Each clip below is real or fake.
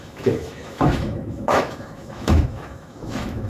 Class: fake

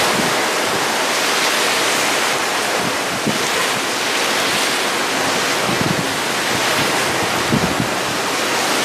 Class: real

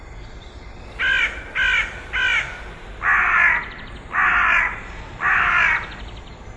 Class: real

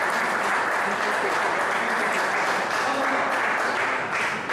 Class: real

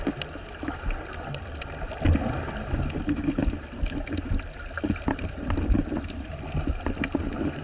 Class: real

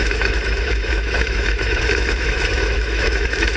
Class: fake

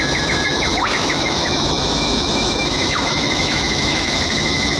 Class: fake